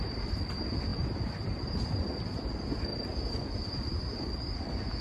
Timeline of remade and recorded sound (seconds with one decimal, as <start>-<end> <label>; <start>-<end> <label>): 0.0-5.0 recorded